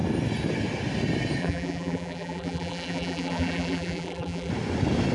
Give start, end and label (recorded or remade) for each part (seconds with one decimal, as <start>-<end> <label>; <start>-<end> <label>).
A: 0.0-1.4 recorded; 1.4-4.5 remade; 4.5-5.1 recorded